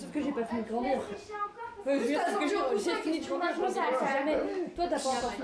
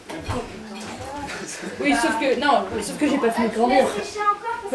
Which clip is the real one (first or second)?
first